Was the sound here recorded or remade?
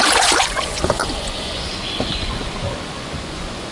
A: remade